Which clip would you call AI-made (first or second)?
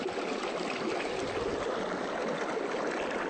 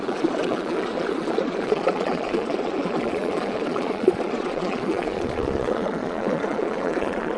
second